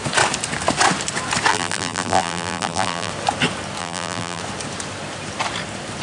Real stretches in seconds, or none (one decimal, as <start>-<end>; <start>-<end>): 0.0-1.5; 3.1-3.8; 4.4-6.0